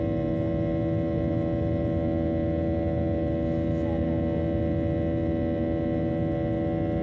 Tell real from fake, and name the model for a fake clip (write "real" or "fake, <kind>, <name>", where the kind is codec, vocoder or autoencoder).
real